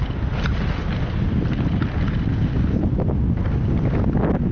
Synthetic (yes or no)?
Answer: no